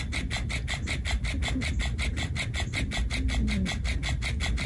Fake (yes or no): no